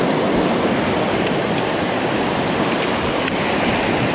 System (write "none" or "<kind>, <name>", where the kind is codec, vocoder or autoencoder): none